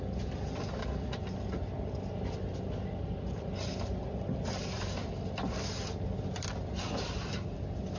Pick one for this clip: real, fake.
real